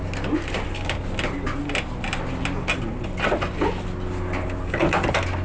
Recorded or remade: recorded